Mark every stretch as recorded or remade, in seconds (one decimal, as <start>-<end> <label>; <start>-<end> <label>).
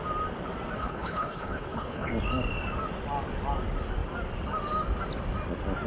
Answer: 0.0-0.8 recorded; 0.8-2.1 remade; 2.1-5.9 recorded